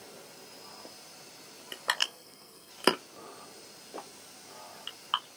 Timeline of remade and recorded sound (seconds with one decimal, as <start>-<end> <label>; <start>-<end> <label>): 0.0-2.0 recorded; 2.0-2.7 remade; 2.7-5.4 recorded

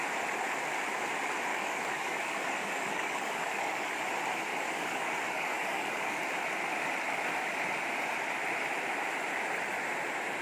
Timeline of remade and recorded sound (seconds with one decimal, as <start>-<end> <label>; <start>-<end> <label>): 0.0-1.5 recorded; 1.5-3.9 remade; 3.9-4.5 recorded; 4.5-6.2 remade; 6.2-10.4 recorded

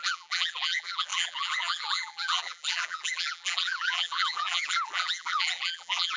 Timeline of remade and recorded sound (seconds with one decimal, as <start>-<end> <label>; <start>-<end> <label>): 0.0-6.2 remade

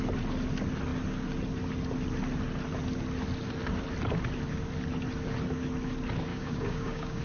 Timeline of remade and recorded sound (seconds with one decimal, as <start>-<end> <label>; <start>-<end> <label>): 0.0-6.3 recorded; 6.3-7.2 remade

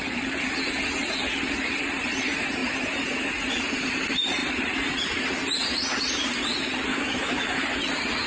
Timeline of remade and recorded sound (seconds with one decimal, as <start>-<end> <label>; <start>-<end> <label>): 0.0-6.9 recorded; 6.9-7.6 remade; 7.6-8.3 recorded